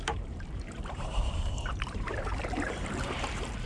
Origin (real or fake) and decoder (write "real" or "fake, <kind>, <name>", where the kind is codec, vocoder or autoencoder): fake, vocoder, BigVGAN v2